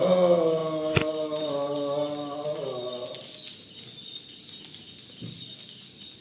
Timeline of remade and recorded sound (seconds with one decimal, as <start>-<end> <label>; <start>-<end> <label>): 0.0-6.2 recorded